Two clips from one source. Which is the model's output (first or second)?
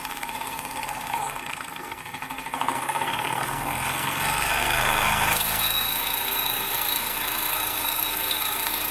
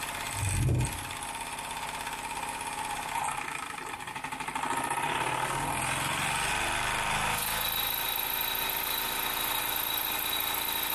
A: first